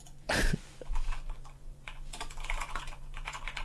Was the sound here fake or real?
fake